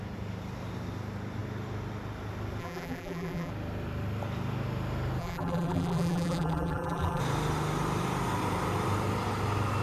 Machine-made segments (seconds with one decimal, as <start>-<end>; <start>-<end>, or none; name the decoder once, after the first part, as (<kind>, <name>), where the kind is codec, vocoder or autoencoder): 2.6-3.5 (vocoder, BigVGAN v2); 5.2-7.2